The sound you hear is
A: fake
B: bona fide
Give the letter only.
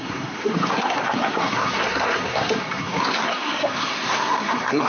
A